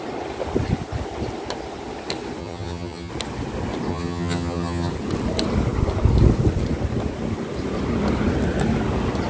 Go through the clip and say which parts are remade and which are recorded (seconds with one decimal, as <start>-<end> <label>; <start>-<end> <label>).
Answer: 0.0-2.4 recorded; 2.4-3.1 remade; 3.1-3.9 recorded; 3.9-4.9 remade; 4.9-9.3 recorded